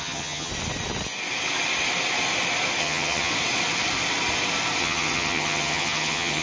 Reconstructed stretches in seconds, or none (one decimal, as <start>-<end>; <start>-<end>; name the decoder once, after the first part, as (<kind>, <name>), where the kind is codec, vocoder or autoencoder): 0.0-0.5 (vocoder, HiFi-GAN); 2.8-3.3; 4.8-6.4

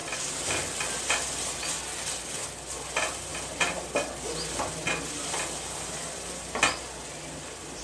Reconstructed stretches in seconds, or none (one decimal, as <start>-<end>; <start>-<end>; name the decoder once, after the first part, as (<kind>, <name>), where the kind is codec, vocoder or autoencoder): none

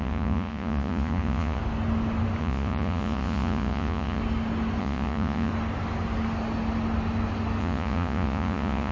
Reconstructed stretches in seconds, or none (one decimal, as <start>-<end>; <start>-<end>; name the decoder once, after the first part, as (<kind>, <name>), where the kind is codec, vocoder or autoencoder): 0.0-1.6 (vocoder, Vocos); 2.4-4.2; 4.8-5.5; 7.6-8.9

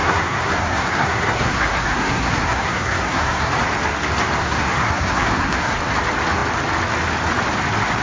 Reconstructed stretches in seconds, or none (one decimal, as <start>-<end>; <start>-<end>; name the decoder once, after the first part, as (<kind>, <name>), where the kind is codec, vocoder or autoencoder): 0.0-3.5 (codec, SNAC); 4.4-5.8